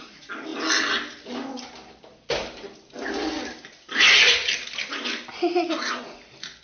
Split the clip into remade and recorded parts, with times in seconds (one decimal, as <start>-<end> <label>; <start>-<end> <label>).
0.0-6.6 recorded